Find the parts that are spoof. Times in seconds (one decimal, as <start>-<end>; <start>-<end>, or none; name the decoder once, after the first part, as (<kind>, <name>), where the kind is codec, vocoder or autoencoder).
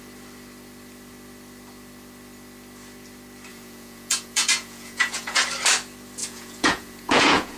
3.5-5.4 (vocoder, Vocos); 6.2-7.6